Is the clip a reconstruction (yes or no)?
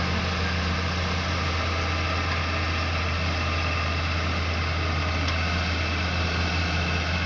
no